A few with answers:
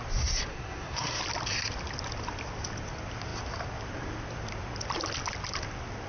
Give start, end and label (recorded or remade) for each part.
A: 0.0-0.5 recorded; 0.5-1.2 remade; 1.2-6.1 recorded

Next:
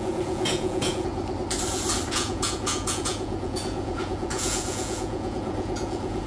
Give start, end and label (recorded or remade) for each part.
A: 0.0-1.1 remade; 1.1-2.1 recorded; 2.1-6.3 remade

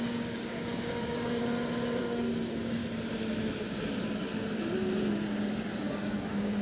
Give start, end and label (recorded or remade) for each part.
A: 0.0-1.4 remade; 1.4-2.0 recorded; 2.0-2.8 remade; 2.8-5.8 recorded; 5.8-6.6 remade

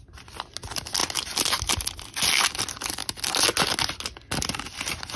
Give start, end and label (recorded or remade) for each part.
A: 0.0-5.2 recorded